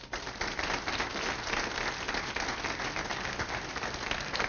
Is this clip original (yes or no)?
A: yes